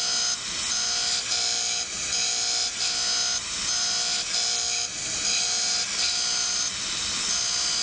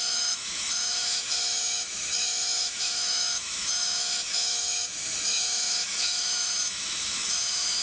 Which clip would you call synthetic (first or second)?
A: second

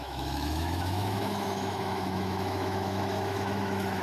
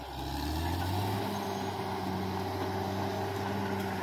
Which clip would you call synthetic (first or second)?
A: first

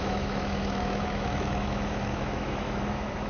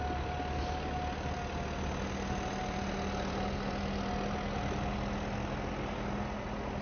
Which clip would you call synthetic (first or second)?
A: first